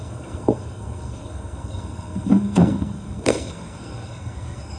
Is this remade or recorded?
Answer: remade